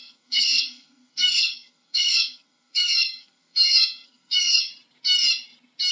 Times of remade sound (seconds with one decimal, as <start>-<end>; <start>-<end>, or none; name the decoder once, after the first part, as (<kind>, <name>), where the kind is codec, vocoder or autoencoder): 0.0-4.7 (codec, SNAC)